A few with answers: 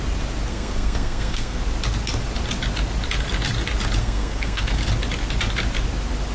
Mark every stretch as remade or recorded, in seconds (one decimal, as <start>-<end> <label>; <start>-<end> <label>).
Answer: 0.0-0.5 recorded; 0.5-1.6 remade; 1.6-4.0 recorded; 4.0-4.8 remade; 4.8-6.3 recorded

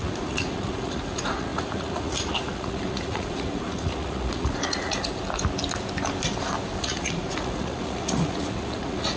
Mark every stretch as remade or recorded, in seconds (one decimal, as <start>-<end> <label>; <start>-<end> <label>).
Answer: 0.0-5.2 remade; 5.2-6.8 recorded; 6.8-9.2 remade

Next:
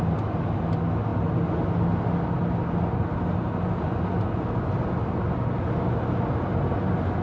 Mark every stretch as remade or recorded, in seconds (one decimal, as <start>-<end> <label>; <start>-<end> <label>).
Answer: 0.0-7.2 recorded